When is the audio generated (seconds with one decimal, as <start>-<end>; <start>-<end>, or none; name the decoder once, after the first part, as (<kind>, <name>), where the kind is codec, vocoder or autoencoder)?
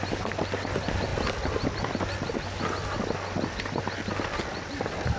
none